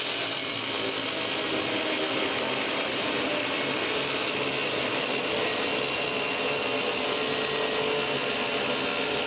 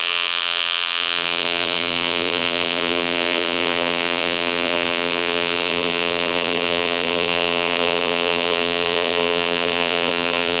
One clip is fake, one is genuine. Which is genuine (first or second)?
first